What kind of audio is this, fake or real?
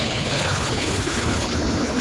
fake